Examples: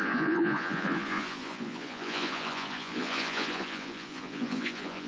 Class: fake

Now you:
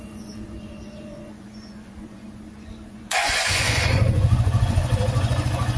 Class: fake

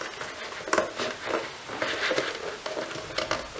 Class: real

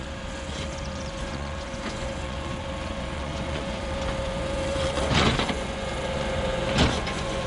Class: fake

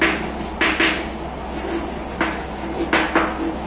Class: real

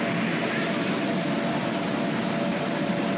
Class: real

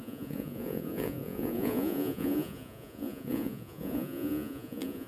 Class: fake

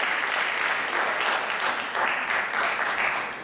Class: real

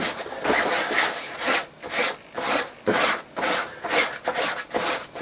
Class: real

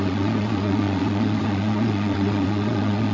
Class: fake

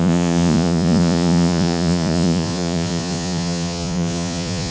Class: fake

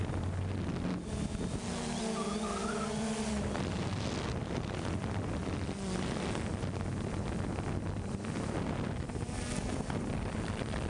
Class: real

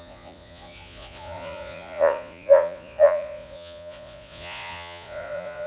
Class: fake